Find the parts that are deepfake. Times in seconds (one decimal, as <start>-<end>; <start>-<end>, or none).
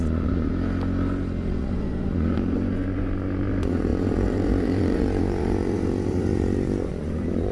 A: 0.0-0.5; 1.5-7.5